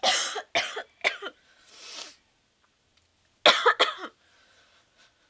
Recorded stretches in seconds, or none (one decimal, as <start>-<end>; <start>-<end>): 0.0-5.3